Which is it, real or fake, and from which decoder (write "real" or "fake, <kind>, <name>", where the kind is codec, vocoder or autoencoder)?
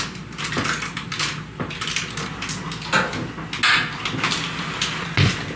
real